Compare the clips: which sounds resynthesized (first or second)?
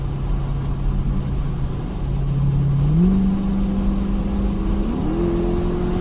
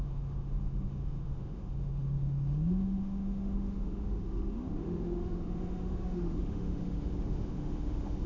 second